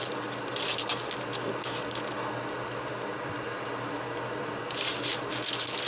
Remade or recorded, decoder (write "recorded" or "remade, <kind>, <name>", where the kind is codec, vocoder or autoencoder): recorded